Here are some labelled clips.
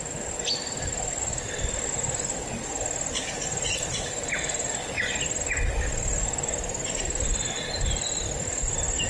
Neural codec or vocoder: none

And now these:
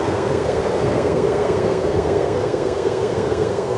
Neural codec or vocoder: codec, SNAC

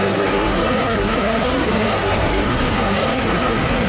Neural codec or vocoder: codec, SNAC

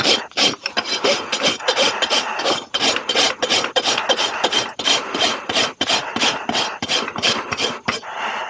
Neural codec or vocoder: none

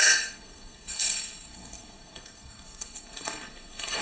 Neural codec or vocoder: codec, SNAC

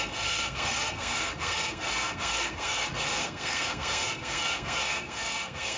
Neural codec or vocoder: codec, SNAC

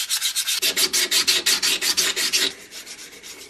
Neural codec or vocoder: none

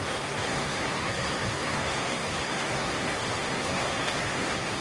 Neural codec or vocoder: codec, SNAC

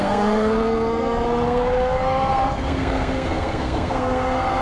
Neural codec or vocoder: codec, SNAC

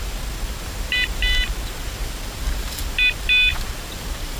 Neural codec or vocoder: none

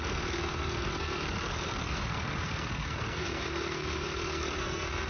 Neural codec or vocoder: codec, SNAC